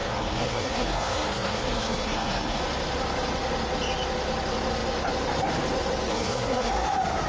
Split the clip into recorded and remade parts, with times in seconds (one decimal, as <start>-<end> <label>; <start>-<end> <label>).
0.0-2.6 remade; 2.6-6.1 recorded; 6.1-6.7 remade; 6.7-7.3 recorded